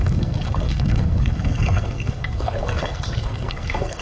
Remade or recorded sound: remade